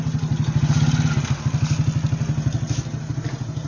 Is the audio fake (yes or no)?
no